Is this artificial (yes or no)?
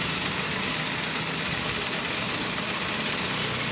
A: no